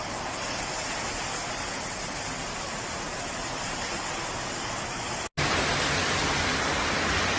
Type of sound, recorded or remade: recorded